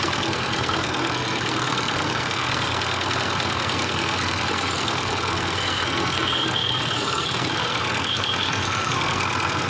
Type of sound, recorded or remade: remade